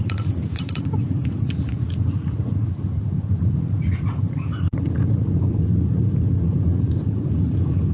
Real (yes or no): no